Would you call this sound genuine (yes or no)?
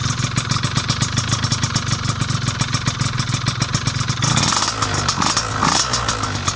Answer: yes